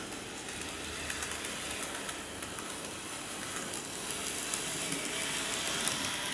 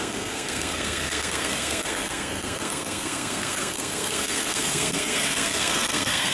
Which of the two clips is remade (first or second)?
second